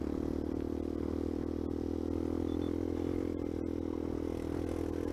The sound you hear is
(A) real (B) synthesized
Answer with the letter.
A